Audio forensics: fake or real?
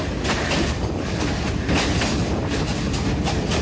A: real